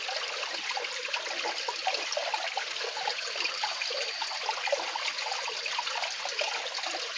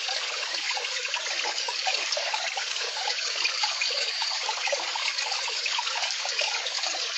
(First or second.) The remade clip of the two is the second